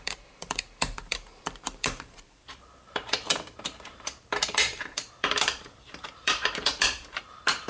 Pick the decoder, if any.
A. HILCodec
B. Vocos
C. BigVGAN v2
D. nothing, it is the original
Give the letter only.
C